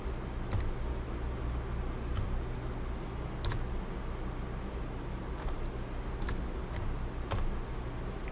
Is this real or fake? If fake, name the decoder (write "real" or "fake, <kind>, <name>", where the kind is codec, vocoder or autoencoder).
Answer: real